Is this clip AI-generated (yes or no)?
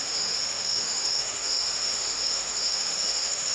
yes